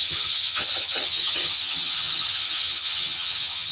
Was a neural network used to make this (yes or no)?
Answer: yes